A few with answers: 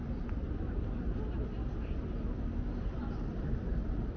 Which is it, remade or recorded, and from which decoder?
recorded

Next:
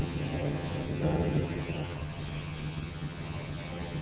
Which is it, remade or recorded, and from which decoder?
remade, vocoder, HiFi-GAN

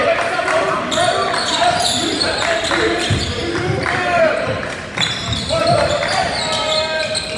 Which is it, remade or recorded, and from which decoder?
remade, vocoder, BigVGAN v2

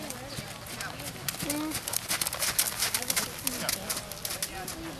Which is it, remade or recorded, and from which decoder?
recorded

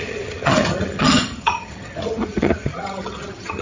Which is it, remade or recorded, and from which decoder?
remade, vocoder, HiFi-GAN